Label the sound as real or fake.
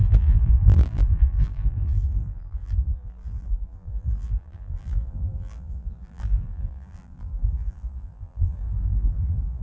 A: fake